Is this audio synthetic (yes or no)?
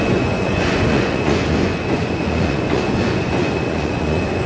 yes